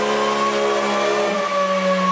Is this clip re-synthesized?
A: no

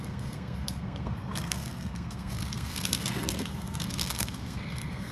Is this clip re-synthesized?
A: yes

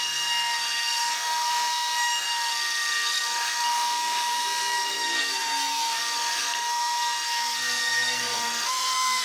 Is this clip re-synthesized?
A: yes